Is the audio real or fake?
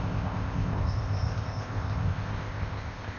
fake